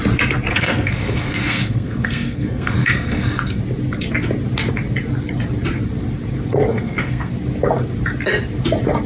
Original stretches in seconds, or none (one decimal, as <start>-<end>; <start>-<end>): 0.0-0.5; 3.6-6.7; 7.3-9.1